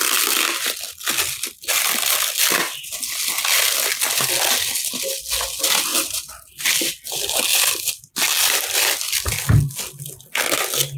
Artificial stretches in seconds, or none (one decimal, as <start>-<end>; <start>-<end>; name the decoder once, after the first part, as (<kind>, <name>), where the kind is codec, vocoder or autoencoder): 2.4-3.1 (vocoder, BigVGAN v2); 7.5-8.1